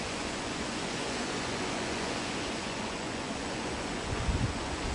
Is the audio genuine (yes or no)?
no